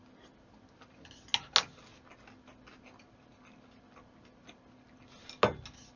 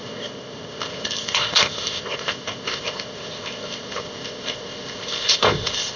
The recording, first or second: first